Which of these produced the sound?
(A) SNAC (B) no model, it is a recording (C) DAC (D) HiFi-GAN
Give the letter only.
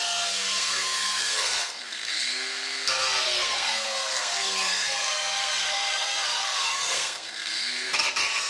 A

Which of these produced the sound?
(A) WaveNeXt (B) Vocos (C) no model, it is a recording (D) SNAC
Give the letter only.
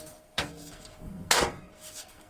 D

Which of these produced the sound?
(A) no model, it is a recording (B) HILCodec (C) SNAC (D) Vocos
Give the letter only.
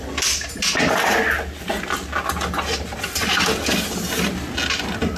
A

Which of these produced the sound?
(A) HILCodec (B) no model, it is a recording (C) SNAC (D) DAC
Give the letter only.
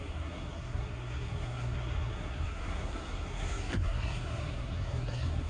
C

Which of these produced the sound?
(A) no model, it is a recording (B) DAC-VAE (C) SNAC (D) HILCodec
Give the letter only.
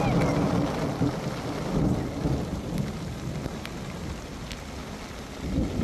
A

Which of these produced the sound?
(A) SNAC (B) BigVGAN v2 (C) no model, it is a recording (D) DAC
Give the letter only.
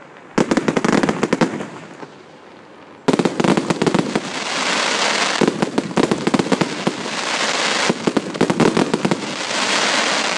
C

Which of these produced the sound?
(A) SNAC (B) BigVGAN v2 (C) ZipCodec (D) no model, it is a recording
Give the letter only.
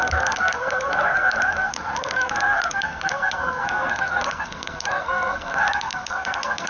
A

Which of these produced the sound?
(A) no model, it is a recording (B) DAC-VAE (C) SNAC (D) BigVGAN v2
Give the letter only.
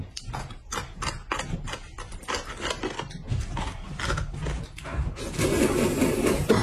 A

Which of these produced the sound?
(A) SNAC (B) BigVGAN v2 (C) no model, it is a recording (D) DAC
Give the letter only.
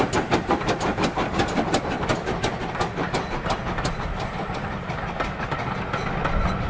C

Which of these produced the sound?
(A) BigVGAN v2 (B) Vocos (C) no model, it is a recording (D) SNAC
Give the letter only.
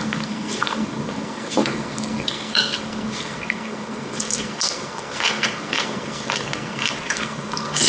D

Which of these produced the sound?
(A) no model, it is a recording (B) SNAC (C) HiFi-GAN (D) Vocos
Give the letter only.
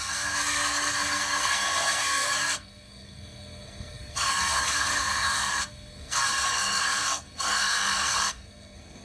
B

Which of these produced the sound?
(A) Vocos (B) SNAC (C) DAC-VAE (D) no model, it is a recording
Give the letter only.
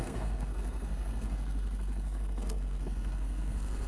B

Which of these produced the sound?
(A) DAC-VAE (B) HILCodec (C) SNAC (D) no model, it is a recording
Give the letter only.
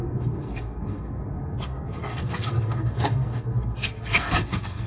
C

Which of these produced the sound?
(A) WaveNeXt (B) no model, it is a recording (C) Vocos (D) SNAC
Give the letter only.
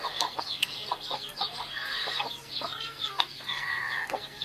D